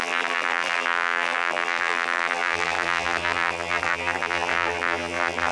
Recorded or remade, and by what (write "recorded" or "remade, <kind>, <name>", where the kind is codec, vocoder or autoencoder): remade, vocoder, BigVGAN v2